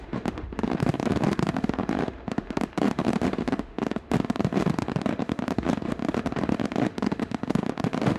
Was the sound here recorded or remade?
remade